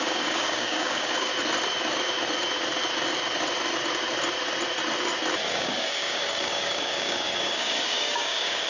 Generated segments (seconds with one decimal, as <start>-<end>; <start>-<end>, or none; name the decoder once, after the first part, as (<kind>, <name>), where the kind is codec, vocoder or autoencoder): 0.0-1.3 (codec, DAC); 5.5-8.7